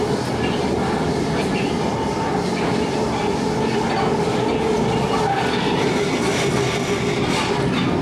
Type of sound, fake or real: real